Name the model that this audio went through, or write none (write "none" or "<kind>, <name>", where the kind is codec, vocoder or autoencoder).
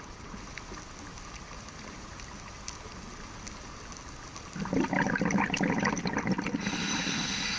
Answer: none